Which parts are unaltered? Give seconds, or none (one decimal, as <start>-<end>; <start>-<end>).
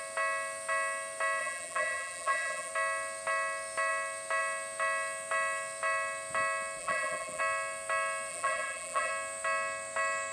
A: 0.0-1.4; 2.7-6.8; 7.4-8.3; 9.1-10.3